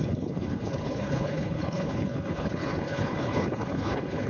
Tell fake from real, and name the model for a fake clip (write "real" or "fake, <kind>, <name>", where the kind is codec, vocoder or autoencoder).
fake, codec, HILCodec